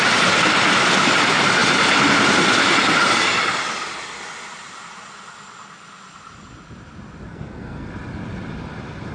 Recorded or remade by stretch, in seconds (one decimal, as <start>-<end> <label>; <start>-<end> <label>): 0.0-7.3 recorded; 7.3-7.9 remade; 7.9-9.1 recorded